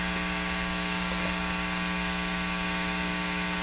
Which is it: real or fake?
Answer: fake